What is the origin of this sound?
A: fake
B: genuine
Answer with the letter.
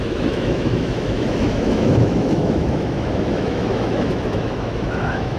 A